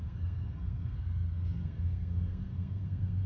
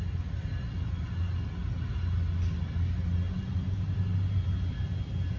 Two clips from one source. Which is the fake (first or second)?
first